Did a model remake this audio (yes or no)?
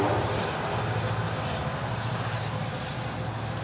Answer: no